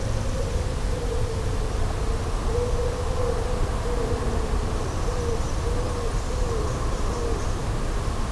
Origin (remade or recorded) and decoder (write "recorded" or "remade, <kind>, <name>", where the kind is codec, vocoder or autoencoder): recorded